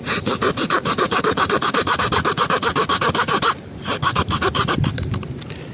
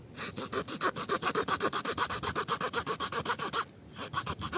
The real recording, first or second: second